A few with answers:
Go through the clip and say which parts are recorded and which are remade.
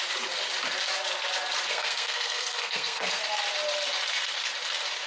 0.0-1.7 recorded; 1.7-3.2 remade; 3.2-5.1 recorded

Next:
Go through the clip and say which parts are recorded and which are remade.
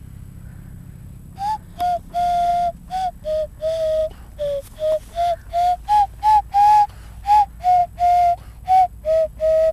0.0-9.7 recorded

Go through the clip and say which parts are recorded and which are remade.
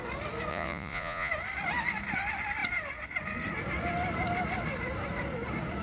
0.0-0.5 recorded; 0.5-1.3 remade; 1.3-5.8 recorded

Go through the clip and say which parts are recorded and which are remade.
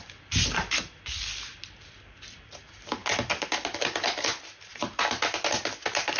0.0-6.2 recorded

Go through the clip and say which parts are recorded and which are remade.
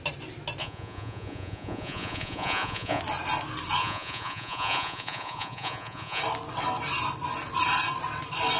0.0-0.6 recorded; 0.6-3.0 remade; 3.0-3.8 recorded; 3.8-6.2 remade; 6.2-8.6 recorded